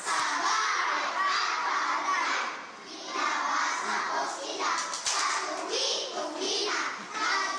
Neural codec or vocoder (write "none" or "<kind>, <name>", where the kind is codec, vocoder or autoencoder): none